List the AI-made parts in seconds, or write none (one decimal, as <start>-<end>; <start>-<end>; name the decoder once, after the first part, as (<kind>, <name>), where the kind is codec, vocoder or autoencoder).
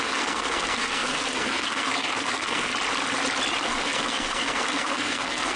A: 0.0-2.7 (codec, SNAC); 3.6-5.6